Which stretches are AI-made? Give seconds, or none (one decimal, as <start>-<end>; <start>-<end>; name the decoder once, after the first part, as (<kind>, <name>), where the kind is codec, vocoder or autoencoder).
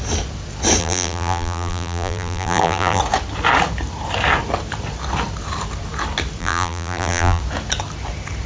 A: 0.8-3.0 (vocoder, BigVGAN v2); 6.4-7.4